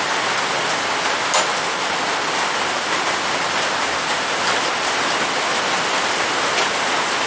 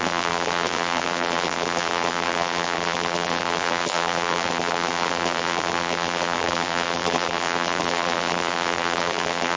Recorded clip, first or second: first